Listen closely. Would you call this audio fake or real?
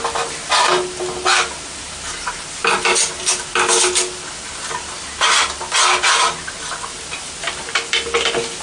real